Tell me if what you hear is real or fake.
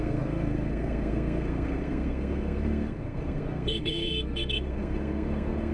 fake